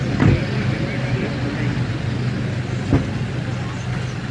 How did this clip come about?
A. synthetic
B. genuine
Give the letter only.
B